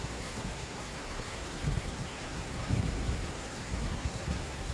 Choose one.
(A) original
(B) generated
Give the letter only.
B